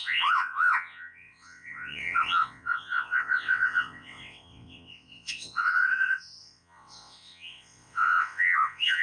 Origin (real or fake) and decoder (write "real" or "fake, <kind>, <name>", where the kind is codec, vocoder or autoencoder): fake, vocoder, WaveNeXt